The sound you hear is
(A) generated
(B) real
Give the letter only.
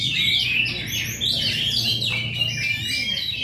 B